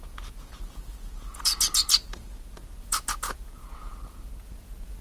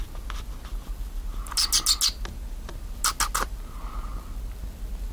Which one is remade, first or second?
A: first